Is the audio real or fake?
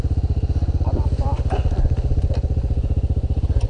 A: real